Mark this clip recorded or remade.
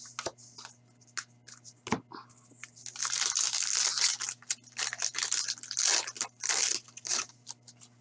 recorded